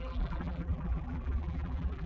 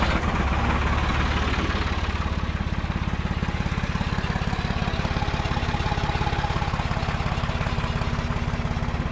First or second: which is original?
second